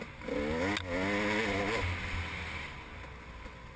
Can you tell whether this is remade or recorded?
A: recorded